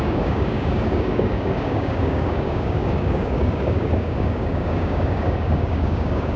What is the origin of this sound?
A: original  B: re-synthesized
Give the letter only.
B